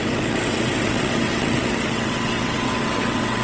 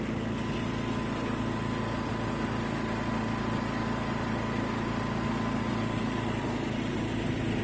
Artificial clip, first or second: first